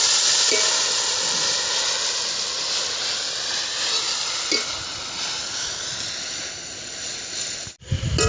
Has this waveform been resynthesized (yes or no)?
no